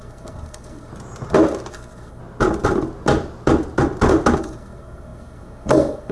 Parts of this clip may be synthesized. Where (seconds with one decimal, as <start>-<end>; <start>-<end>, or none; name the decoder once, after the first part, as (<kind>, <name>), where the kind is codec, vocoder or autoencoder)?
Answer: 0.0-0.9 (codec, SNAC); 1.7-2.2; 4.4-6.1